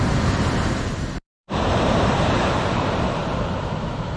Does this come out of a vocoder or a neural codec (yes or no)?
yes